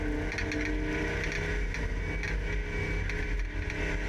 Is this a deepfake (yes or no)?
no